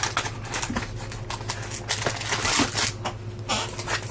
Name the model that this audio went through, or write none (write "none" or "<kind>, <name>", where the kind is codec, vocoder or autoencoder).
none